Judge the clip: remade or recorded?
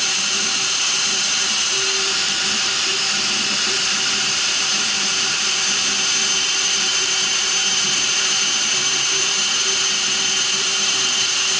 remade